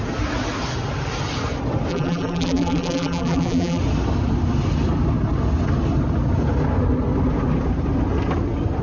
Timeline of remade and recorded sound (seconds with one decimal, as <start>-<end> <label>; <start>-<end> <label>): 0.0-1.9 recorded; 1.9-3.8 remade; 3.8-8.8 recorded

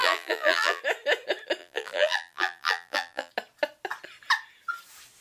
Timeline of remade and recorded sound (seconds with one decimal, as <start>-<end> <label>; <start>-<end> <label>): 0.0-0.8 remade; 0.8-1.6 recorded; 1.6-3.3 remade; 3.3-5.2 recorded

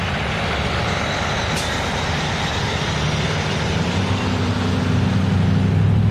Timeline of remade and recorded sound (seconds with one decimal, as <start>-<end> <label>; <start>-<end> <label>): 0.0-1.4 recorded; 1.4-2.9 remade; 2.9-6.1 recorded

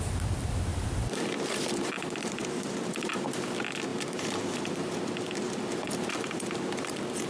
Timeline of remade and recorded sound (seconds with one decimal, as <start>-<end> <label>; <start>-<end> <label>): 0.0-0.7 recorded; 0.7-2.7 remade; 2.7-3.9 recorded; 3.9-6.1 remade; 6.1-7.3 recorded